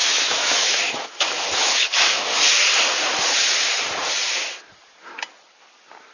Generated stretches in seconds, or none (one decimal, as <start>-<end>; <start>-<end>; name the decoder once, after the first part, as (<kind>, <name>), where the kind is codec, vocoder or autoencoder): 0.0-2.4 (autoencoder, DAC-VAE)

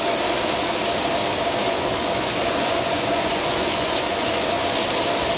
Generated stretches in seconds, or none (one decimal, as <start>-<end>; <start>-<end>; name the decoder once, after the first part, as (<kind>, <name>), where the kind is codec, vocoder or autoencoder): 1.6-4.8 (vocoder, Vocos)

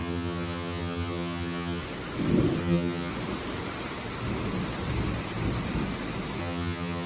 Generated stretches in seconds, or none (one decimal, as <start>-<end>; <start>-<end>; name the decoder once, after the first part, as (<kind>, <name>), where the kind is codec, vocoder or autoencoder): 0.0-1.8 (vocoder, HiFi-GAN); 2.6-3.1; 6.4-7.1

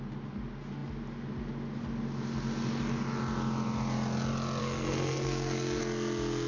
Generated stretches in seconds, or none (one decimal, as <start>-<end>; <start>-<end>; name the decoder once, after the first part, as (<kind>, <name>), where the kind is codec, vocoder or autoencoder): 4.6-5.8 (codec, SNAC)